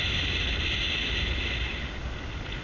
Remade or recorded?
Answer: recorded